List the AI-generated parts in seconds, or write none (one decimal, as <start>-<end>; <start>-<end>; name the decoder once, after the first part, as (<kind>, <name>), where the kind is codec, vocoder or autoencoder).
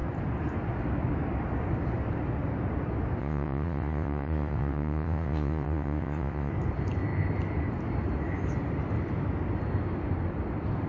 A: 3.2-6.5 (vocoder, WaveNeXt)